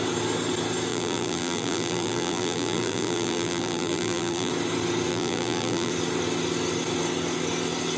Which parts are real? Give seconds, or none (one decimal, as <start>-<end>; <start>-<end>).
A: 0.0-0.9; 4.5-5.1; 5.9-8.0